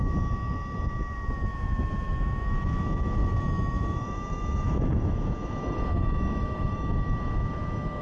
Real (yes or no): no